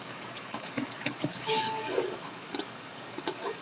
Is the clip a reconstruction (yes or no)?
yes